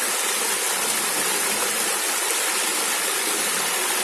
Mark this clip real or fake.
real